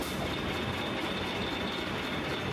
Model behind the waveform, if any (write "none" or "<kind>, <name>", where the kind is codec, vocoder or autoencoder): none